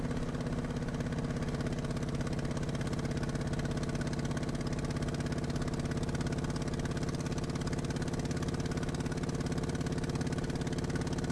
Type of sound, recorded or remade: recorded